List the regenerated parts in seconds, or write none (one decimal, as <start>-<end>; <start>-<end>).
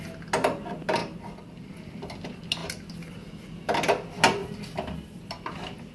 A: 1.0-1.7